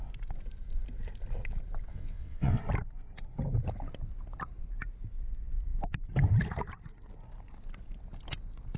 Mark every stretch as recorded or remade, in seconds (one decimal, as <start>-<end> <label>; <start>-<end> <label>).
0.0-1.9 recorded; 1.9-2.6 remade; 2.6-8.8 recorded